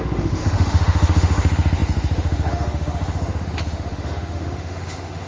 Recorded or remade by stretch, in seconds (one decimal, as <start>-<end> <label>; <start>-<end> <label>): 0.0-5.3 remade